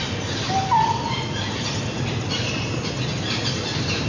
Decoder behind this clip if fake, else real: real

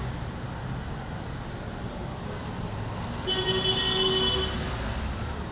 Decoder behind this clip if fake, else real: real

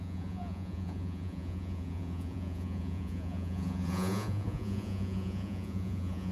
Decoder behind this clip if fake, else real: fake, vocoder, Vocos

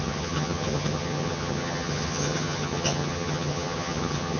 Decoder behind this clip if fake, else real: fake, vocoder, HiFi-GAN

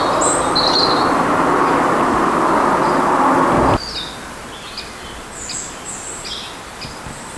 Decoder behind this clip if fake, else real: real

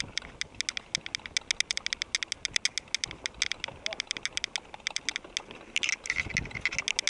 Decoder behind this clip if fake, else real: real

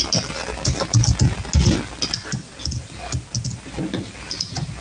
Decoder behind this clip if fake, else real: real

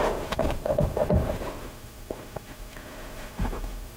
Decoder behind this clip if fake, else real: fake, autoencoder, DAC-VAE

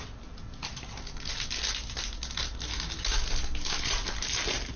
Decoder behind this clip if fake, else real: real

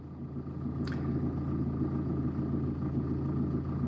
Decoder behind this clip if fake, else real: real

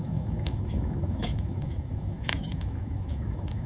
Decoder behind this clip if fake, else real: fake, autoencoder, DAC-VAE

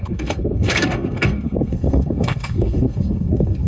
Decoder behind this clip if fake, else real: fake, codec, SNAC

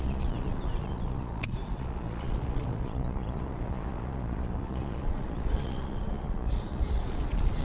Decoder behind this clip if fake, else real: fake, vocoder, Vocos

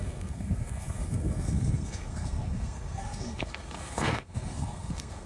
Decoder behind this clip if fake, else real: fake, codec, SNAC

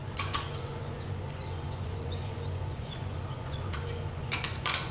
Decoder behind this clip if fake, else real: fake, vocoder, Vocos